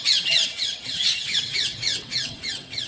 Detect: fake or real fake